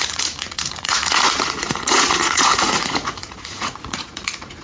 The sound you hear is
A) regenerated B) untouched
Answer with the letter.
A